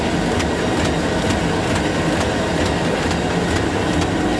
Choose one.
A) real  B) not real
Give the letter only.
A